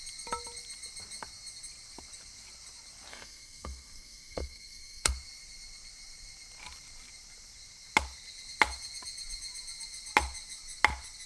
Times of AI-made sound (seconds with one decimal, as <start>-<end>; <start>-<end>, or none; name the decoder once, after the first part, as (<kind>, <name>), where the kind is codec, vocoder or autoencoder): 3.1-5.1 (codec, SNAC)